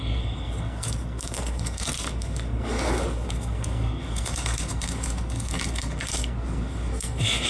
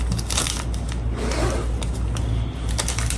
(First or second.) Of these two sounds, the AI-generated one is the first